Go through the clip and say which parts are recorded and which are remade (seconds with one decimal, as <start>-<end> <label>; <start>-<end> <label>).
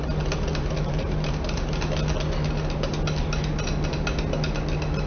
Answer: 0.0-0.5 recorded; 0.5-1.3 remade; 1.3-5.1 recorded